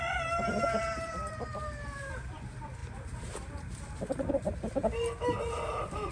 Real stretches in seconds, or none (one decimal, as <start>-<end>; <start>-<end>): 4.8-5.6